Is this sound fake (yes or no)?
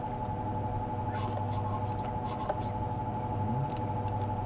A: no